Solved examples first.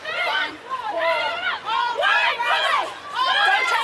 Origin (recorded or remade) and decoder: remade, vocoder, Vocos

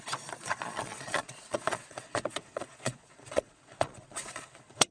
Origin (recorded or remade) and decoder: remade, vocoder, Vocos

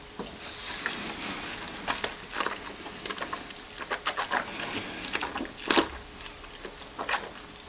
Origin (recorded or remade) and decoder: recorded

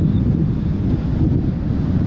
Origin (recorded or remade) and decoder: recorded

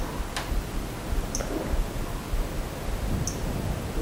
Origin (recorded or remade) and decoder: recorded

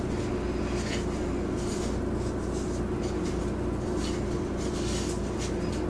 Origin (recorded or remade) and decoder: recorded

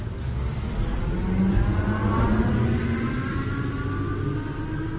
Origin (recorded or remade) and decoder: recorded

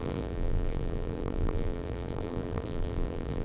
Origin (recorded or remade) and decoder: remade, vocoder, BigVGAN v2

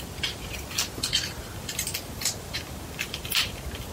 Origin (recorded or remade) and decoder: remade, vocoder, BigVGAN v2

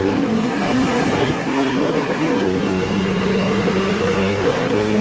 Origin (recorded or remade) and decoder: remade, codec, SNAC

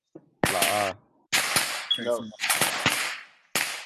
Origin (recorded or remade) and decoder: recorded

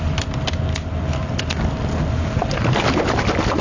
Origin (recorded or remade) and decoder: recorded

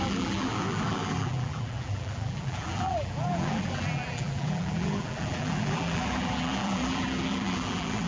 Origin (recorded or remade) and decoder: remade, vocoder, BigVGAN v2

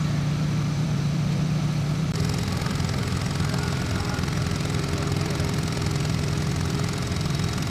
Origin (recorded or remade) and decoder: remade, vocoder, BigVGAN v2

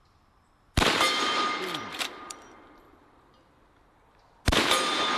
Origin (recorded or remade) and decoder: remade, vocoder, BigVGAN v2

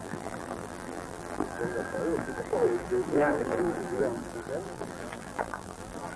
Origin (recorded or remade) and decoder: remade, vocoder, BigVGAN v2